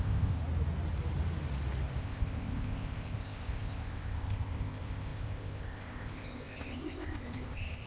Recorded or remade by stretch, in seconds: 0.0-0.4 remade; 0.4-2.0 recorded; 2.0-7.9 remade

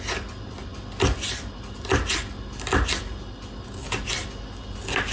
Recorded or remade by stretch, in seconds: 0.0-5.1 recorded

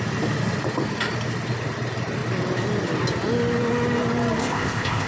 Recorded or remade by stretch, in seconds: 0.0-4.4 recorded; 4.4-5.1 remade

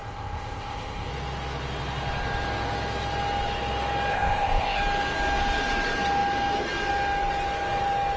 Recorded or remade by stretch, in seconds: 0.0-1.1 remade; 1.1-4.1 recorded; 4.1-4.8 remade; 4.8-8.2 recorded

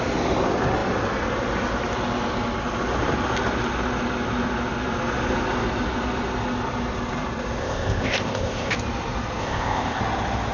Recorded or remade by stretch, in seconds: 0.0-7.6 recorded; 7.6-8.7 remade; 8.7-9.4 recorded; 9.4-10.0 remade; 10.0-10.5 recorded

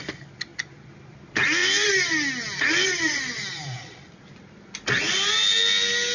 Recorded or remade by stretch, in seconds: 0.0-6.1 recorded

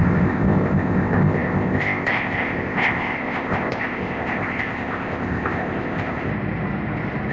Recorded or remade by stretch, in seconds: 0.0-6.3 remade; 6.3-7.3 recorded

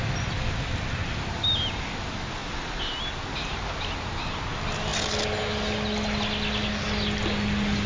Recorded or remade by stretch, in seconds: 0.0-7.9 recorded